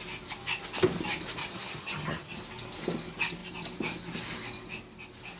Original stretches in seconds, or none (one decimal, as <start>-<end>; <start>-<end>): 0.0-1.4; 2.4-5.4